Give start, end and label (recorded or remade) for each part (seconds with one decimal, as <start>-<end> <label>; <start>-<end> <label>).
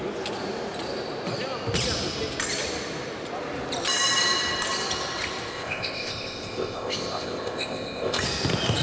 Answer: 0.0-5.5 recorded; 5.5-8.2 remade; 8.2-8.8 recorded